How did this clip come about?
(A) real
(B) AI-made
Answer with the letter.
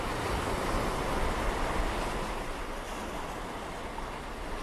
A